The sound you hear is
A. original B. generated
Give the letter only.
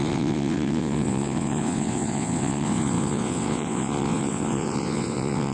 B